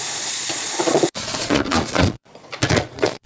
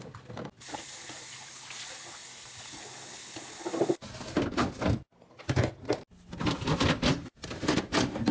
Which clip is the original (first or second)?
second